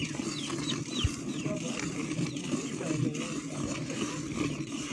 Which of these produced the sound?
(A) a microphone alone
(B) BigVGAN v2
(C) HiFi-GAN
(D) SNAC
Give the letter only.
A